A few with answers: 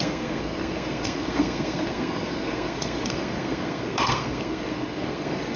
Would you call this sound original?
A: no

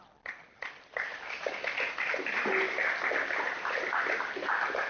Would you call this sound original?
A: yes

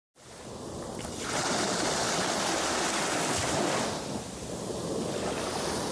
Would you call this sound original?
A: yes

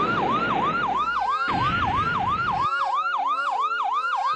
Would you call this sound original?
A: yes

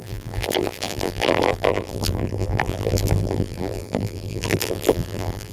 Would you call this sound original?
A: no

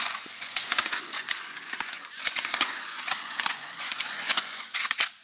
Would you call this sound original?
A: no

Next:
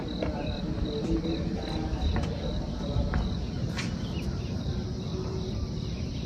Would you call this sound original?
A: yes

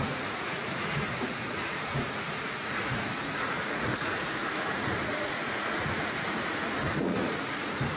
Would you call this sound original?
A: no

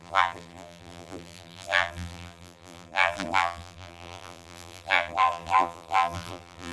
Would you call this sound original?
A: no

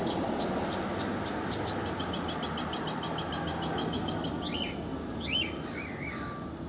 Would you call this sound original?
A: yes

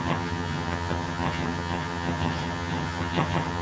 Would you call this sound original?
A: no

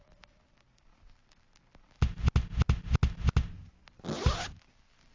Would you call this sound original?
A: yes